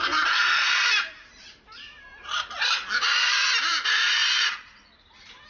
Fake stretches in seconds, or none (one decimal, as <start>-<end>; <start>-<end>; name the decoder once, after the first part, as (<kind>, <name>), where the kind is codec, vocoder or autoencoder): 0.4-3.7 (vocoder, BigVGAN v2); 4.2-5.1

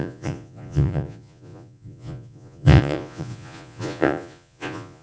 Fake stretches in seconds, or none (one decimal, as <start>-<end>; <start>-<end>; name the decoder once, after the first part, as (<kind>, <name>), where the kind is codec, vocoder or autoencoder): 0.0-5.0 (vocoder, Vocos)

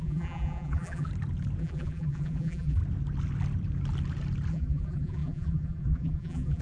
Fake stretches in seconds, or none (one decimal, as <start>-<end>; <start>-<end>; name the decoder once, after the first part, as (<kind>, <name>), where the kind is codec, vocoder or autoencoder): 0.0-1.1 (vocoder, BigVGAN v2); 1.6-2.8; 4.5-6.6

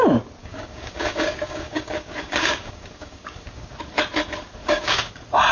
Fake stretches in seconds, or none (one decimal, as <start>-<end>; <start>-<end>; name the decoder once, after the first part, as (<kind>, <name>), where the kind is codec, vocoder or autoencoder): 0.4-3.7 (codec, DAC); 4.6-5.1

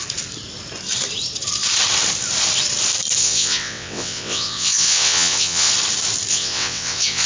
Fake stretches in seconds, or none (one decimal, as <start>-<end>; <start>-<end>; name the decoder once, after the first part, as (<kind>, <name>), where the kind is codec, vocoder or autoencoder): 3.2-5.7 (vocoder, WaveNeXt); 6.3-7.3